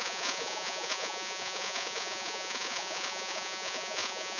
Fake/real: fake